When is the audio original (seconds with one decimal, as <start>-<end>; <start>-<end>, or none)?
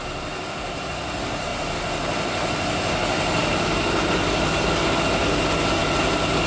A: 0.0-6.5